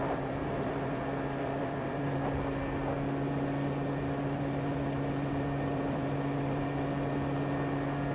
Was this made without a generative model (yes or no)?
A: no